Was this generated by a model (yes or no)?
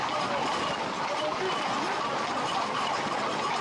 no